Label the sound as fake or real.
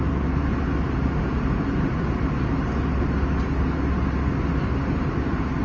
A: real